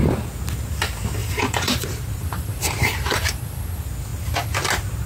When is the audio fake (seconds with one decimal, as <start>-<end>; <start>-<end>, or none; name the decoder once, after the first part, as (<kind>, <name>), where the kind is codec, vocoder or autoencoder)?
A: 1.2-3.3 (vocoder, BigVGAN v2)

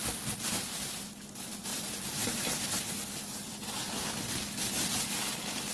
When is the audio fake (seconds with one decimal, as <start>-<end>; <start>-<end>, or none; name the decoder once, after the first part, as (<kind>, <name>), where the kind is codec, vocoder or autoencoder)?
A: 1.7-2.4 (vocoder, BigVGAN v2)